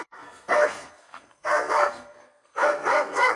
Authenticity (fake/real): fake